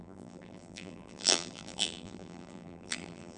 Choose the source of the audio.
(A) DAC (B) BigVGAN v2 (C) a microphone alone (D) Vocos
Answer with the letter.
B